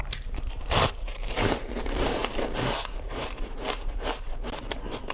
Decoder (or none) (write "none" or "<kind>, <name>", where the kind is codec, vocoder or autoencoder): vocoder, BigVGAN v2